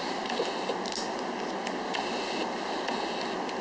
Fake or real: real